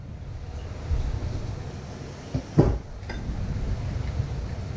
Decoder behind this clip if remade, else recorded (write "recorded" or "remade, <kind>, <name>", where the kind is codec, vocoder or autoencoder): recorded